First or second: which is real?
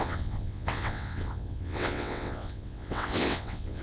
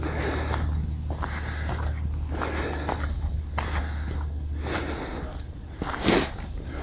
second